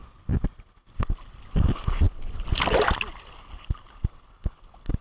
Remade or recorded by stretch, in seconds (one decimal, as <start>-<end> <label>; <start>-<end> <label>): 0.0-5.0 recorded